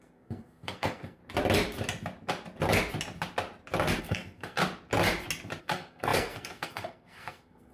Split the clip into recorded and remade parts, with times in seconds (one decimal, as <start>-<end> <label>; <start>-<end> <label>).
0.0-1.2 remade; 1.2-4.0 recorded; 4.0-4.6 remade; 4.6-5.6 recorded; 5.6-7.7 remade

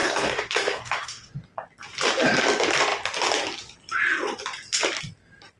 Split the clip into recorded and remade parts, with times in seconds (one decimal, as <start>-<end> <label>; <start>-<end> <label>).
0.0-1.3 remade; 1.3-5.6 recorded

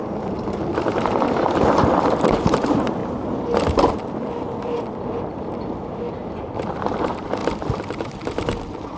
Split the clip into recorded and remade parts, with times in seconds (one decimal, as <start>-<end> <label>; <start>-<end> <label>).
0.0-3.0 remade; 3.0-5.2 recorded; 5.2-6.2 remade; 6.2-6.9 recorded; 6.9-7.4 remade; 7.4-9.0 recorded

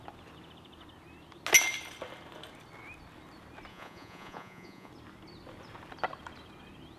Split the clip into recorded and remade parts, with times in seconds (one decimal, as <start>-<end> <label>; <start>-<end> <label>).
0.0-3.7 recorded; 3.7-4.9 remade; 4.9-7.0 recorded

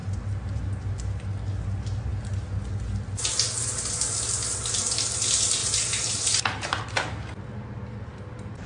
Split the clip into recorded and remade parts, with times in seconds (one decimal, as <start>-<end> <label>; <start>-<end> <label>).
0.0-0.6 remade; 0.6-5.6 recorded; 5.6-6.8 remade; 6.8-8.7 recorded

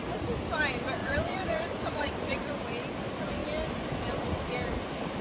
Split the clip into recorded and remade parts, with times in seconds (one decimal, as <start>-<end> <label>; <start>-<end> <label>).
0.0-1.0 recorded; 1.0-2.5 remade; 2.5-5.2 recorded

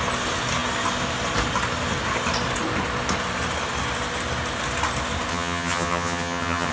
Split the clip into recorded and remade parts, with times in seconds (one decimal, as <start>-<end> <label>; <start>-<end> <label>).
0.0-5.3 recorded; 5.3-6.7 remade

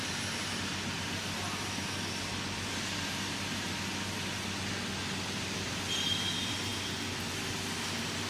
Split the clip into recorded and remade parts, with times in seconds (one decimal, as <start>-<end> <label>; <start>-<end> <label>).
0.0-8.3 recorded